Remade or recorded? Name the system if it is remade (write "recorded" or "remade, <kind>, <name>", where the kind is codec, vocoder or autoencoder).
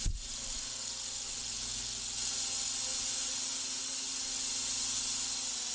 recorded